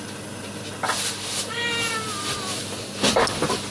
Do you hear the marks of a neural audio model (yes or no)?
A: no